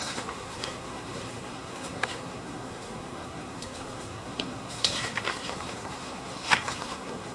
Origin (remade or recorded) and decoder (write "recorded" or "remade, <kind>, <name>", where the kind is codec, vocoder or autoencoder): remade, codec, SNAC